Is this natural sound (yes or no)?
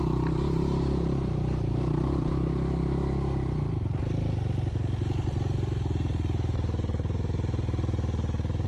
yes